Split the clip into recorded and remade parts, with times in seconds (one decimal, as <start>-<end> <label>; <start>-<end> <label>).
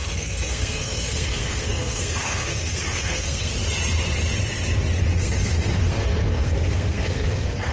0.0-3.5 remade; 3.5-5.2 recorded; 5.2-7.7 remade